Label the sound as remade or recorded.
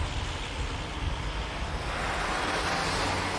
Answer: recorded